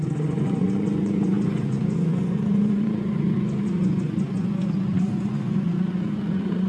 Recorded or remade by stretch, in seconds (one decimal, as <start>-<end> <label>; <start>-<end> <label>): 0.0-6.7 remade